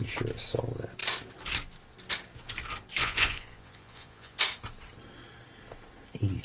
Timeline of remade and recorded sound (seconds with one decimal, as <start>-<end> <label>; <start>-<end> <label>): 0.0-3.0 recorded; 3.0-4.4 remade; 4.4-6.4 recorded